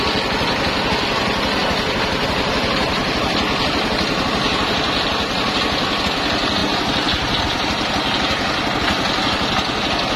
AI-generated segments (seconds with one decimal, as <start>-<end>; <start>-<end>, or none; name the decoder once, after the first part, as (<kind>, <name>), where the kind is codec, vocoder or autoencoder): 6.6-7.4 (vocoder, BigVGAN v2)